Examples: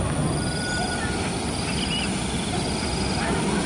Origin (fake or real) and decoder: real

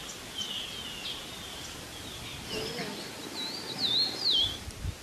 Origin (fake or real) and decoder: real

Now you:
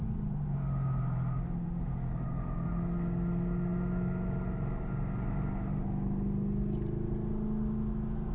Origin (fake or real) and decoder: real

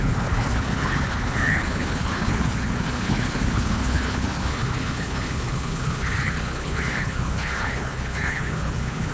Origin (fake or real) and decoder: fake, codec, HILCodec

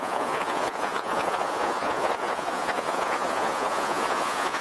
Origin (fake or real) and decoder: fake, vocoder, Vocos